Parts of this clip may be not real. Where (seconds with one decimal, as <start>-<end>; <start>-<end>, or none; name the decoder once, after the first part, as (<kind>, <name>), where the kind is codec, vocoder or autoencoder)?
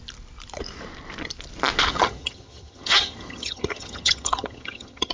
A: 1.9-5.1 (vocoder, HiFi-GAN)